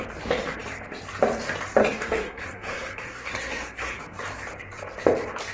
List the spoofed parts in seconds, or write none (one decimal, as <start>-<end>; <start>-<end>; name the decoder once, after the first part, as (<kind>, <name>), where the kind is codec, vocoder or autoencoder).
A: 1.8-4.0 (codec, SNAC)

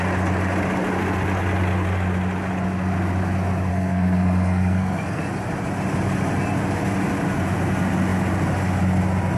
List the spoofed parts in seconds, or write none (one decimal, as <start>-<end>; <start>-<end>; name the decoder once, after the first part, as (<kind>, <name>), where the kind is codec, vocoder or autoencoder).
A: 3.7-5.2 (codec, SNAC)

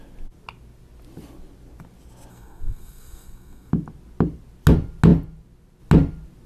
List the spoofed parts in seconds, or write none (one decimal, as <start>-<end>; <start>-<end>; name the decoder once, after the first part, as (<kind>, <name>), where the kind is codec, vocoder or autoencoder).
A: 2.3-3.7 (codec, SNAC)

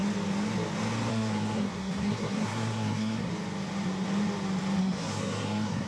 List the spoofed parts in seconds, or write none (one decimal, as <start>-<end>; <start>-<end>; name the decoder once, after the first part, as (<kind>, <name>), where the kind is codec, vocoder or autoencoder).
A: 1.1-3.3 (codec, SNAC); 4.8-5.9